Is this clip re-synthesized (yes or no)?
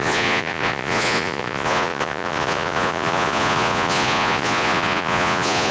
yes